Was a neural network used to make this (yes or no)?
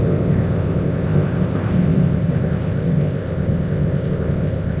yes